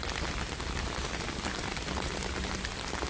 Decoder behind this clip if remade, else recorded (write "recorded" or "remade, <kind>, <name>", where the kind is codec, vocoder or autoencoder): recorded